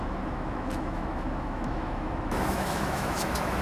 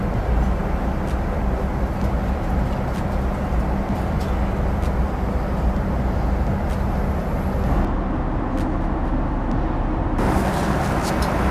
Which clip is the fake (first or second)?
first